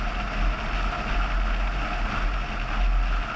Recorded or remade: recorded